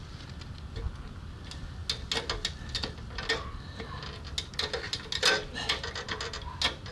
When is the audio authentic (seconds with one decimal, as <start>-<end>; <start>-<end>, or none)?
0.0-6.9